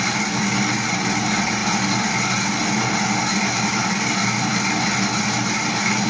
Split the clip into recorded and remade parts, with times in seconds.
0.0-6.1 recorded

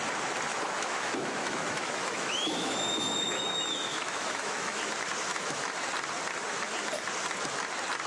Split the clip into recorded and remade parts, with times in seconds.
0.0-0.5 recorded; 0.5-4.8 remade; 4.8-5.3 recorded; 5.3-5.9 remade; 5.9-8.1 recorded

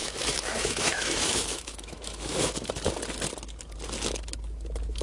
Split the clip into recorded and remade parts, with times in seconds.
0.0-2.9 remade; 2.9-5.0 recorded

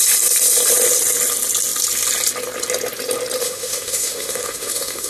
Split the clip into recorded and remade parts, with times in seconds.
0.0-3.4 recorded; 3.4-5.1 remade

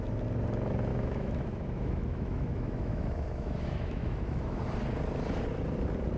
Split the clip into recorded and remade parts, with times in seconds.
0.0-0.9 recorded; 0.9-4.6 remade; 4.6-6.2 recorded

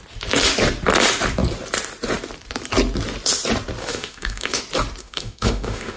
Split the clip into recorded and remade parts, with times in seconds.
0.0-3.8 recorded; 3.8-4.6 remade; 4.6-5.0 recorded; 5.0-6.0 remade

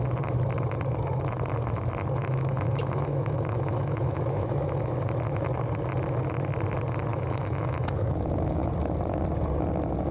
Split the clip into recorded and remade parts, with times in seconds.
0.0-2.2 recorded; 2.2-4.9 remade; 4.9-7.1 recorded; 7.1-8.7 remade; 8.7-10.1 recorded

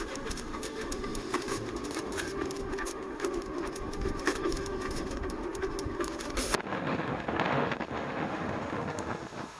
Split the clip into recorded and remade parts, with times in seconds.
0.0-9.6 remade